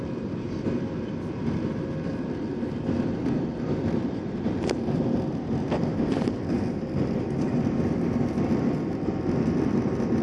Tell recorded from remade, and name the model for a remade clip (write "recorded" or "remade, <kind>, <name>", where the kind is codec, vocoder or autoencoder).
remade, vocoder, BigVGAN v2